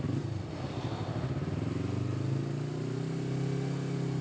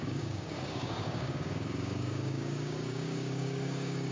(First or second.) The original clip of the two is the first